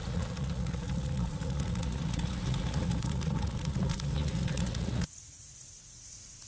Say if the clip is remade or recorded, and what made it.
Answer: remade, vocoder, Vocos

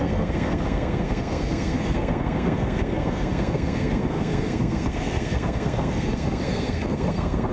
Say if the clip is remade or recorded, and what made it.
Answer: remade, codec, SNAC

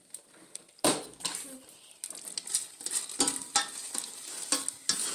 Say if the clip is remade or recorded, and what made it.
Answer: recorded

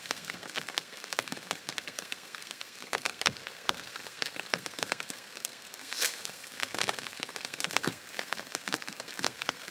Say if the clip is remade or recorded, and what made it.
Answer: remade, codec, SNAC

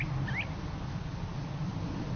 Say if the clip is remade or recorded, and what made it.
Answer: recorded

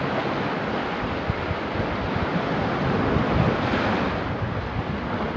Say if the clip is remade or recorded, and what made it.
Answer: recorded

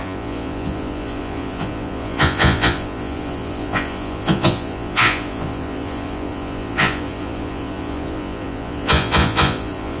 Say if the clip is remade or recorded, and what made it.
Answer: remade, vocoder, Vocos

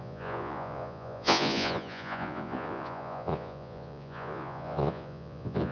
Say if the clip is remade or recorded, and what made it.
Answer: remade, vocoder, Vocos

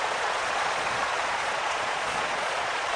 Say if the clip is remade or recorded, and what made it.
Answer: remade, vocoder, Vocos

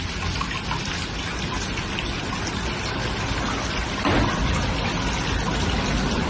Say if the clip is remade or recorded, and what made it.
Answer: recorded